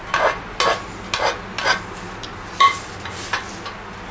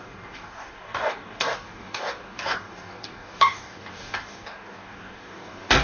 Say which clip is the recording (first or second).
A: first